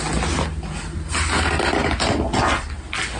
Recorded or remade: recorded